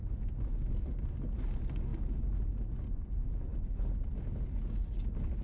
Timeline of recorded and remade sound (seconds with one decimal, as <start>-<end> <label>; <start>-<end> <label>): 0.0-5.4 recorded